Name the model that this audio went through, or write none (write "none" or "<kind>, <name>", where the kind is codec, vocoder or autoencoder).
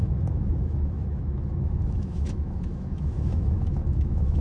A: autoencoder, DAC-VAE